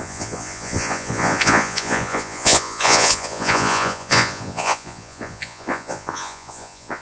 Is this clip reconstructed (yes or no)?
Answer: yes